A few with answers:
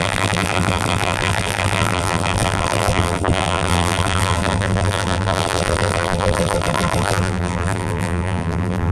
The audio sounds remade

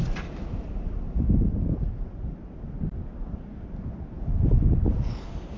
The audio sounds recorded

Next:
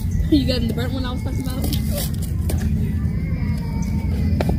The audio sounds recorded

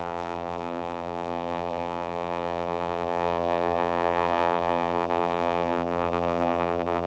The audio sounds remade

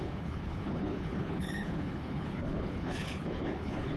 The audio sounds remade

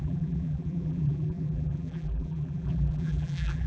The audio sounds remade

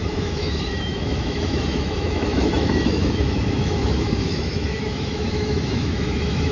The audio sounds remade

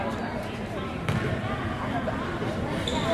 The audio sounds remade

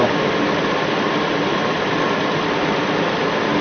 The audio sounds recorded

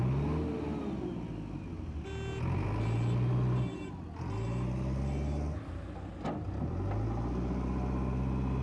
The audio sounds recorded